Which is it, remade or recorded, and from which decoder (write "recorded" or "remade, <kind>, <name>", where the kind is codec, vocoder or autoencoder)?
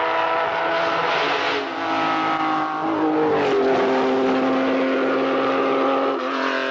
recorded